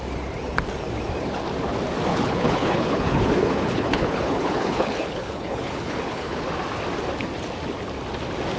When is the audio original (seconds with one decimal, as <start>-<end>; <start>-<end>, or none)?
0.0-2.1; 6.4-8.6